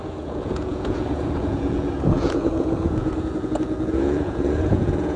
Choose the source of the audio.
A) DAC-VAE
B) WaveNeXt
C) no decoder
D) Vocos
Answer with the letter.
D